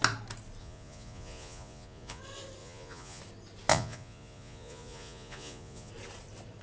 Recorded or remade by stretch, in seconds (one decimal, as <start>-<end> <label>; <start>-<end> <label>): 0.0-0.6 recorded; 0.6-2.2 remade; 2.2-2.6 recorded; 2.6-3.2 remade; 3.2-3.7 recorded; 3.7-5.9 remade; 5.9-6.6 recorded